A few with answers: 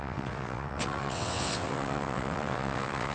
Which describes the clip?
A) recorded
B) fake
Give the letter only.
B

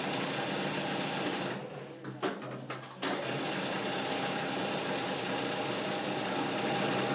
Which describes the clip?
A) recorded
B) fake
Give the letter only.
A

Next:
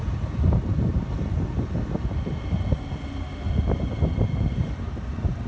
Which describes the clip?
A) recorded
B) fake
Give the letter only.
A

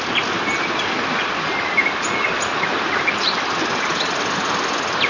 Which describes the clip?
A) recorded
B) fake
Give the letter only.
A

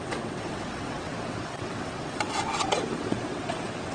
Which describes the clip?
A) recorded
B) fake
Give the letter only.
B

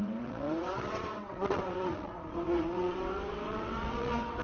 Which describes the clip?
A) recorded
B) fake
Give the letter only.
B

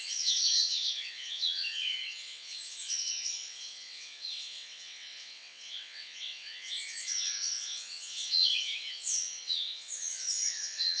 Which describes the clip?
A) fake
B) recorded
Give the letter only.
A